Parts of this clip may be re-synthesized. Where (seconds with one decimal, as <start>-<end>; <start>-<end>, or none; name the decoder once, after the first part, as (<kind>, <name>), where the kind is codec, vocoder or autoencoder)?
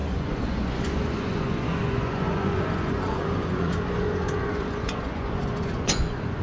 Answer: 0.0-6.4 (vocoder, Vocos)